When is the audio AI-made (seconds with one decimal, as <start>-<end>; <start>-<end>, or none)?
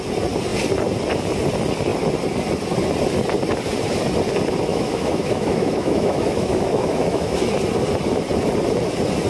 4.7-7.4